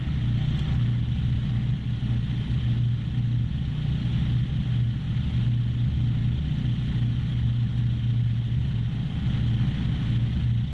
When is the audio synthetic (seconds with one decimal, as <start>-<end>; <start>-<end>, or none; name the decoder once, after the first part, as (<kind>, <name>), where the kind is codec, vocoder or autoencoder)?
none